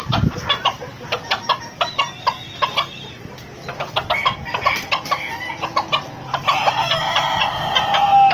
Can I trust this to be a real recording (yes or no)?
yes